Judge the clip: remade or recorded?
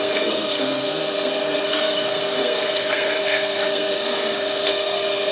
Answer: remade